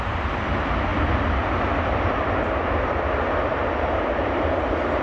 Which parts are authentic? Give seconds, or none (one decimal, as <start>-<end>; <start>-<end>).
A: 0.0-0.9; 3.5-5.0